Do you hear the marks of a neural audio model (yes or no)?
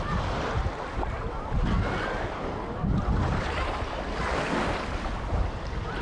no